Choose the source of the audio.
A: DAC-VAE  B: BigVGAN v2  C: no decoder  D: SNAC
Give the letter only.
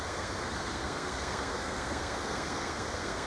D